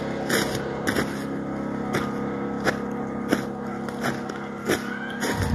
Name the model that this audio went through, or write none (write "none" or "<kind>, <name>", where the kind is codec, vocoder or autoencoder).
none